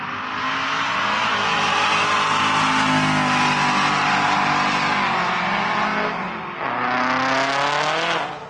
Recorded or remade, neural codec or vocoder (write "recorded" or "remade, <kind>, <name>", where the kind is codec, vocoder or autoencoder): recorded